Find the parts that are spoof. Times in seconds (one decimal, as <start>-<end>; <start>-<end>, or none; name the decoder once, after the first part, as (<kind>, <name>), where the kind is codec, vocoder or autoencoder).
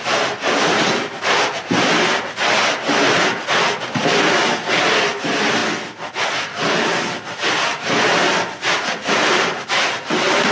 none